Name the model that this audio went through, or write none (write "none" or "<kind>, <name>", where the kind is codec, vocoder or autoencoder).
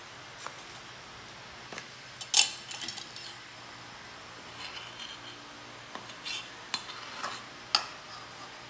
none